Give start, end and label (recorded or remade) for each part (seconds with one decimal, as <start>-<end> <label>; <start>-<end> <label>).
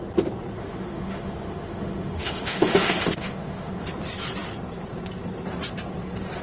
0.0-0.6 recorded; 0.6-3.7 remade; 3.7-6.4 recorded